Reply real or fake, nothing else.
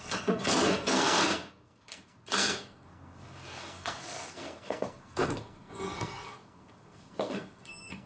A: fake